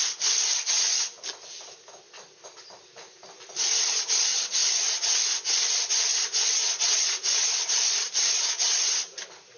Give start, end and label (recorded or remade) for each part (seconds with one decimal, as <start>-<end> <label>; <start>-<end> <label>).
0.0-9.6 recorded